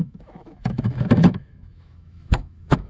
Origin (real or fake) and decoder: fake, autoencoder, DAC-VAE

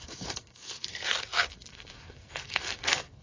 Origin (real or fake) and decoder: fake, codec, SNAC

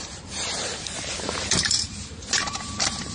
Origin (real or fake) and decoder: fake, vocoder, BigVGAN v2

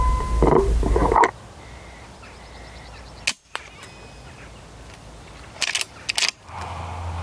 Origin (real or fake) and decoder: real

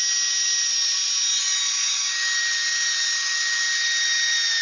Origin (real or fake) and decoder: real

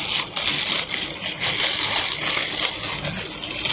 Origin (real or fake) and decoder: real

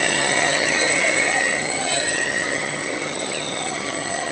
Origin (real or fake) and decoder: fake, vocoder, HiFi-GAN